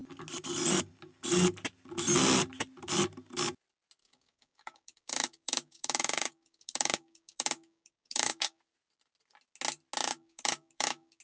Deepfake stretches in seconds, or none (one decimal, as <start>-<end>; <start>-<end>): 4.0-8.6; 10.0-11.2